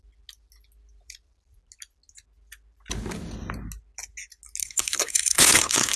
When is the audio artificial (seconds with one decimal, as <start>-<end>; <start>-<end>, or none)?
4.6-6.0